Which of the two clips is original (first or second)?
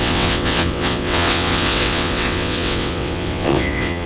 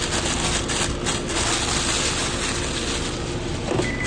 second